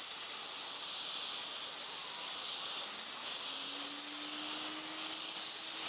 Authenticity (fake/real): real